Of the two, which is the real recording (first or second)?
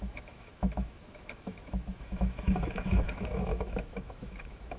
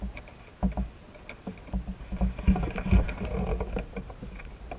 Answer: second